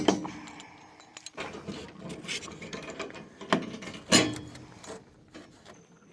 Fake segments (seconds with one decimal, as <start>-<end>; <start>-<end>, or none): none